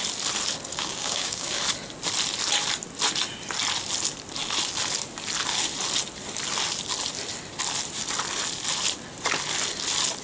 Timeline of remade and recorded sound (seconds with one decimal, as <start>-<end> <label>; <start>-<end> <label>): 0.0-0.7 recorded; 0.7-1.6 remade; 1.6-10.2 recorded